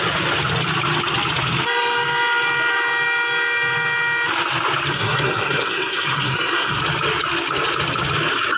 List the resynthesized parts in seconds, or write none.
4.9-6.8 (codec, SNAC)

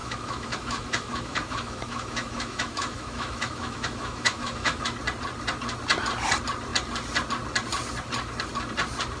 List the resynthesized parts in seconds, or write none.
0.0-4.8 (autoencoder, DAC-VAE)